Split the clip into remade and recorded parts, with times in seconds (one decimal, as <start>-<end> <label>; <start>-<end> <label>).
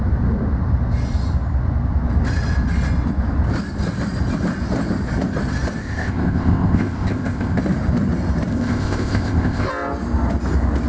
0.0-5.8 recorded; 5.8-7.6 remade; 7.6-8.5 recorded; 8.5-9.7 remade; 9.7-10.9 recorded